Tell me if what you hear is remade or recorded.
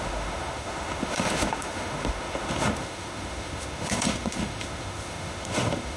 remade